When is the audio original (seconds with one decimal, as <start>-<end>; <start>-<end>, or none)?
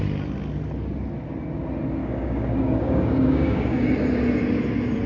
0.0-2.0; 3.8-5.1